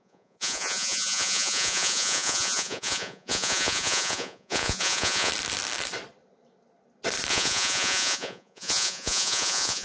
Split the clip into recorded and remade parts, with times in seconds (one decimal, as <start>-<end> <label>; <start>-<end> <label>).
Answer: 0.0-5.3 remade; 5.3-7.3 recorded; 7.3-9.8 remade